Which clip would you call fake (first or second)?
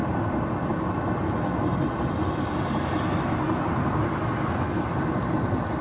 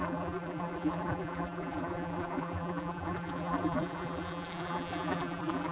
second